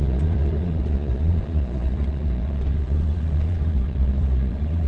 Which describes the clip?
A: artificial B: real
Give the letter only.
A